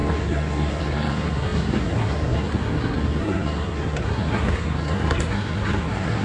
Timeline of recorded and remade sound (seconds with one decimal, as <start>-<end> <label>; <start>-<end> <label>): 0.0-6.2 remade